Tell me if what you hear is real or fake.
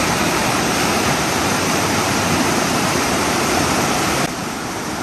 fake